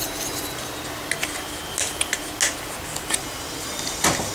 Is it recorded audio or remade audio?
recorded